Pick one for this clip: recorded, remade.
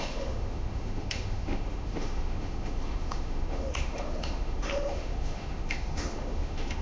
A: remade